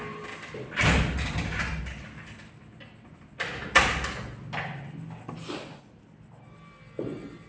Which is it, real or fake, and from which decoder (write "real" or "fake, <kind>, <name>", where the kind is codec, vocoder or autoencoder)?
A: real